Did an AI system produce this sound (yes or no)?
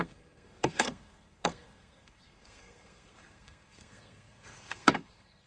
yes